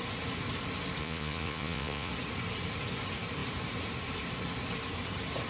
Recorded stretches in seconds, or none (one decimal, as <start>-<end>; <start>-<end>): 0.0-1.0; 2.1-5.5